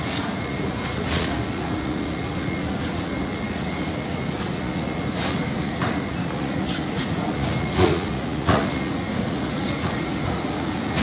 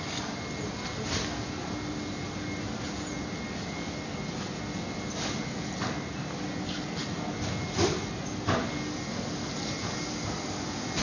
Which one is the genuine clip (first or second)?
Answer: second